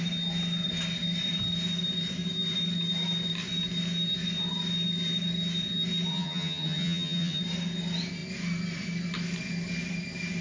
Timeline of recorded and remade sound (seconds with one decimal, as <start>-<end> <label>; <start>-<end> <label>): 0.0-6.1 recorded; 6.1-7.4 remade; 7.4-10.4 recorded

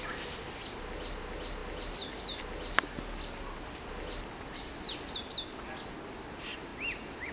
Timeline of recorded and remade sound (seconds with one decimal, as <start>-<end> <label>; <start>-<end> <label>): 0.0-7.3 recorded

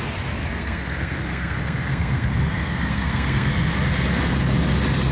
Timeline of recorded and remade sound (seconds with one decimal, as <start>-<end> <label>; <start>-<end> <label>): 0.0-0.4 recorded; 0.4-3.5 remade; 3.5-5.1 recorded

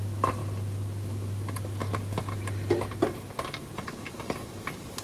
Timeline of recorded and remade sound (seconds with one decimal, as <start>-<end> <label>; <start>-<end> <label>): 0.0-5.0 recorded

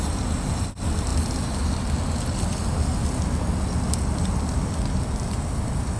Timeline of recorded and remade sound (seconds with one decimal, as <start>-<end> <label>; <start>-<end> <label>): 0.0-6.0 recorded

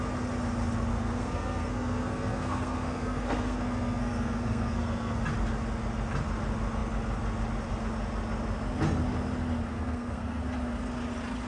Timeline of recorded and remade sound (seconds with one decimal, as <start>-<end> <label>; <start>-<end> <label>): 0.0-0.9 recorded; 0.9-5.2 remade; 5.2-9.7 recorded; 9.7-10.4 remade; 10.4-11.5 recorded

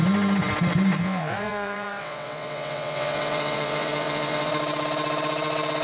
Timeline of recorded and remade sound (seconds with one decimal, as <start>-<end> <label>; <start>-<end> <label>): 0.0-1.0 recorded; 1.0-4.5 remade; 4.5-5.8 recorded